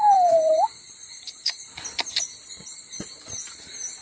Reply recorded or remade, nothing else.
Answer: remade